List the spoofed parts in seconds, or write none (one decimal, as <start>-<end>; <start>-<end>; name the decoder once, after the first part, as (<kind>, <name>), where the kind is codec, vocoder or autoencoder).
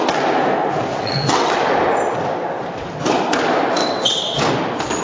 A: 0.9-1.5 (vocoder, WaveNeXt); 3.8-4.5